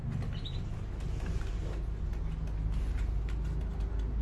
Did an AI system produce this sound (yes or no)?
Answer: no